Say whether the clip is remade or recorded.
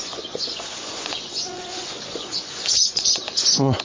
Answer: remade